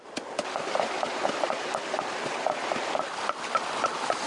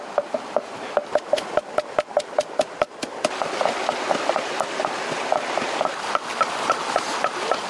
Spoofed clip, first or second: first